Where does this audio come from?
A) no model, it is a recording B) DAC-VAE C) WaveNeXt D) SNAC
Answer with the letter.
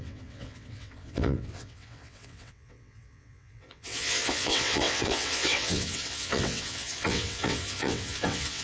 C